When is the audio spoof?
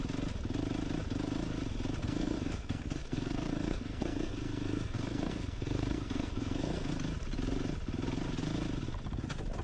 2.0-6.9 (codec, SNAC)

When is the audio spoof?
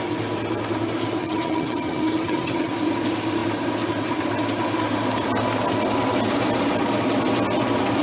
1.2-2.7 (vocoder, HiFi-GAN)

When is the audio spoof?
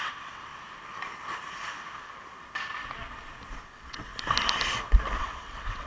0.0-0.5 (vocoder, WaveNeXt); 3.6-4.1; 5.2-5.9